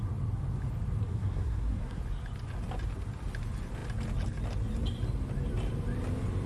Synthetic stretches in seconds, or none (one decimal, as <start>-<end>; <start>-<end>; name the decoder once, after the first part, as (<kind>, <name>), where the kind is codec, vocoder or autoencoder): 1.1-2.0 (codec, SNAC)